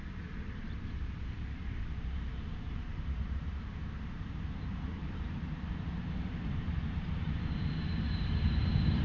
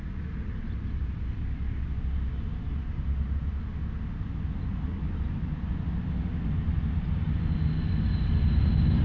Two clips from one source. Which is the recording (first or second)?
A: second